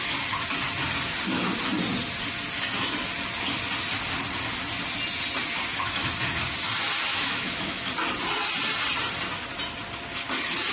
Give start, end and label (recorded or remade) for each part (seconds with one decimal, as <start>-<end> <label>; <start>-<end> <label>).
0.0-7.1 recorded; 7.1-7.9 remade; 7.9-10.7 recorded